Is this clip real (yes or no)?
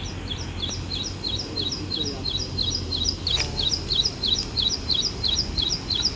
yes